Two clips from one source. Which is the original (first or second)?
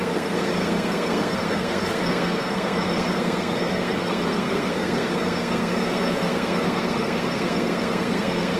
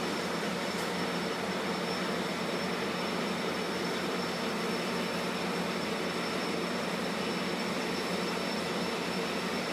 second